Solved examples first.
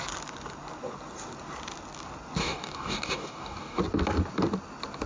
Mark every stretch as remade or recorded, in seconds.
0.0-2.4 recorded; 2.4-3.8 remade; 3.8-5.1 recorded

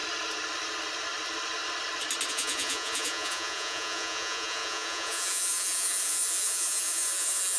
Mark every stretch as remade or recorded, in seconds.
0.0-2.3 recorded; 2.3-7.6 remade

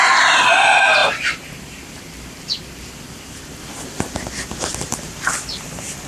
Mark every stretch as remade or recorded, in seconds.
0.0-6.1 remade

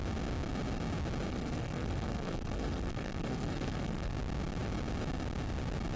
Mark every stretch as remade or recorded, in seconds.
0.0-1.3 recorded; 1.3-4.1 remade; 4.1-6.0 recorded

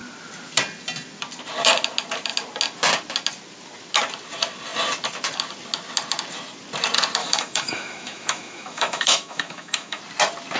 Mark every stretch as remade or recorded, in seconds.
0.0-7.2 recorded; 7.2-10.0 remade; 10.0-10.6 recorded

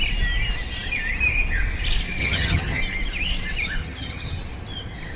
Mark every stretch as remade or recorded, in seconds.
0.0-2.2 recorded; 2.2-2.8 remade; 2.8-3.8 recorded; 3.8-4.4 remade; 4.4-5.2 recorded

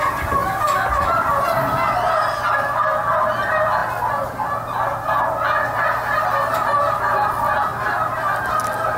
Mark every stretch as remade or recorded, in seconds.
0.0-9.0 recorded

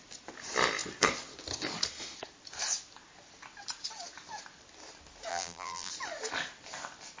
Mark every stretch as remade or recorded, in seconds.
0.0-5.3 recorded; 5.3-5.9 remade; 5.9-7.2 recorded